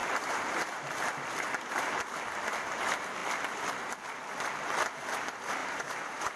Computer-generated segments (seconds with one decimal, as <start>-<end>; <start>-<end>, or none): 0.0-0.8; 5.6-6.4

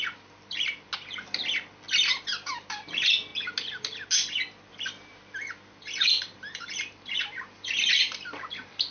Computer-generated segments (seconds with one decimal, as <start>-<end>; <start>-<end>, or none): 0.0-0.9; 2.2-3.3; 4.7-8.9

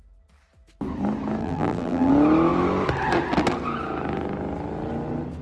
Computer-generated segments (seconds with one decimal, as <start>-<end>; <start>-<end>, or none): 1.4-2.1

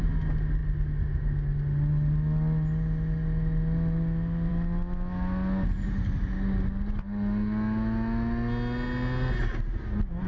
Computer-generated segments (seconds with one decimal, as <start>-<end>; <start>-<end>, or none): none

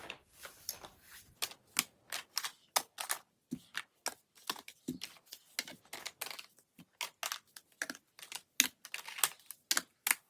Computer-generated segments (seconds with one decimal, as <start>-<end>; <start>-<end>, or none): none

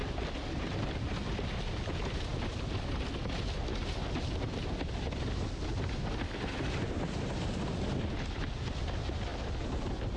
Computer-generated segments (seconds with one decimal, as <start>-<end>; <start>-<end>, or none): none